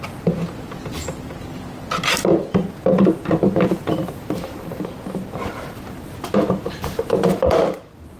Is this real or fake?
real